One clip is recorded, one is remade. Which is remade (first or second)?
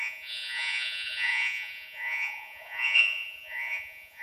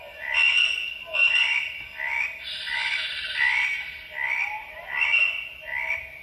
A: first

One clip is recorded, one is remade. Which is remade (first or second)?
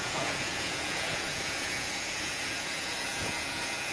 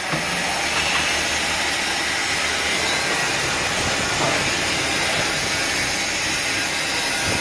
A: first